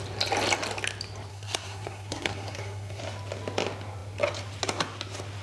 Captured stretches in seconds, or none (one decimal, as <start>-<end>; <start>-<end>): 0.0-1.3; 3.0-5.4